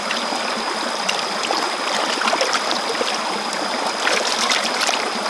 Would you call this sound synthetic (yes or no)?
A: no